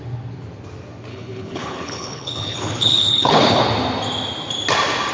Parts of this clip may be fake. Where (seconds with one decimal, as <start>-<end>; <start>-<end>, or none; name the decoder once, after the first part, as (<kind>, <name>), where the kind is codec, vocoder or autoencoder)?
1.1-3.7 (codec, HILCodec)